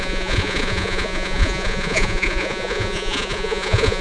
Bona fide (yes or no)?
no